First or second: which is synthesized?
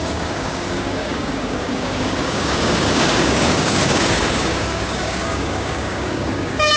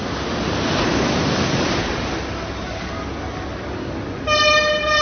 first